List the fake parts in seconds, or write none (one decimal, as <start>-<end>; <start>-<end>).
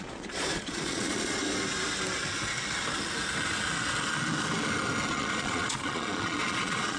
0.0-1.4; 5.1-7.0